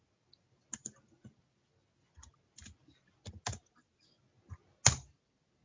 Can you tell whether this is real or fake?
real